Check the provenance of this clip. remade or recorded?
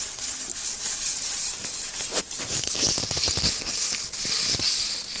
remade